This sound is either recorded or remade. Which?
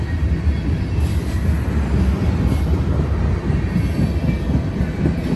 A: recorded